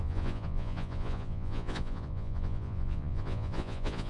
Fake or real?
fake